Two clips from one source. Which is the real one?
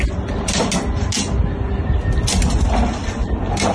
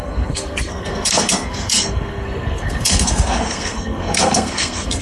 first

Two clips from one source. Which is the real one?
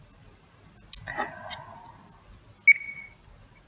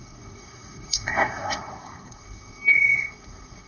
first